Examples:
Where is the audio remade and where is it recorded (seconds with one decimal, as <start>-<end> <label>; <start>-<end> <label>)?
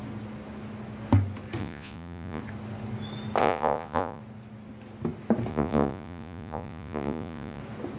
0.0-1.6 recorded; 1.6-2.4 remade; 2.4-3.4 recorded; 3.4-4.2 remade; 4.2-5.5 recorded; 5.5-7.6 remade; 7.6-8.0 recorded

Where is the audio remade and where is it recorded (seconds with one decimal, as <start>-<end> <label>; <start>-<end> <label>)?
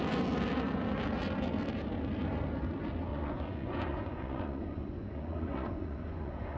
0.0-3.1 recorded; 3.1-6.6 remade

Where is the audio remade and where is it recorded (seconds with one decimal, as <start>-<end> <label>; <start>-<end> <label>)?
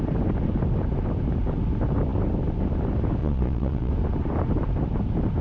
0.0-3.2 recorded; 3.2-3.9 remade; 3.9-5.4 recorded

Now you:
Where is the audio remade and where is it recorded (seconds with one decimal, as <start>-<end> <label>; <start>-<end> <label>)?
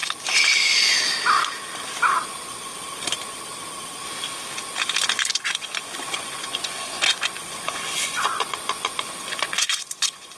0.0-5.3 recorded; 5.3-10.4 remade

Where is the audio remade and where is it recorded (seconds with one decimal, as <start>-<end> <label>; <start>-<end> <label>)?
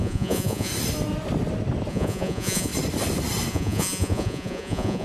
0.0-0.7 remade; 0.7-1.9 recorded; 1.9-2.7 remade; 2.7-3.5 recorded; 3.5-5.0 remade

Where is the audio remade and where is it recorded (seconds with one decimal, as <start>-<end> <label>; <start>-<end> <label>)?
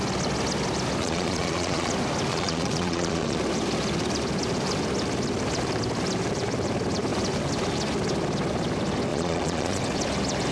0.0-1.0 recorded; 1.0-1.9 remade; 1.9-2.3 recorded; 2.3-3.4 remade; 3.4-9.1 recorded; 9.1-9.8 remade; 9.8-10.5 recorded